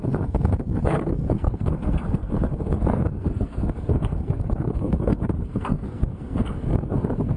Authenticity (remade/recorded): remade